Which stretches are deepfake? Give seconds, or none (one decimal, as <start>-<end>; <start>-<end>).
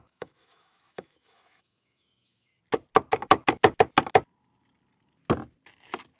0.0-2.5